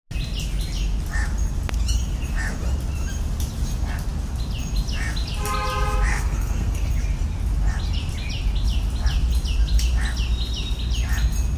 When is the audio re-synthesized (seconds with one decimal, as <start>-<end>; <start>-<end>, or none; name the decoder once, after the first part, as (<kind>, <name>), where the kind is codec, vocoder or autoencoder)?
6.1-6.9 (codec, SNAC)